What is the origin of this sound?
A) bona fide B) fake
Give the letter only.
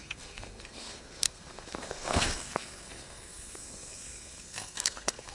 B